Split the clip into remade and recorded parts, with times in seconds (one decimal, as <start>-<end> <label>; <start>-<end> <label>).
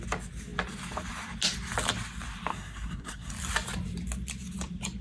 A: 0.0-2.5 recorded; 2.5-3.3 remade; 3.3-5.0 recorded